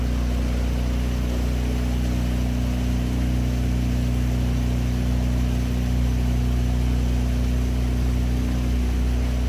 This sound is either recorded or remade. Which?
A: recorded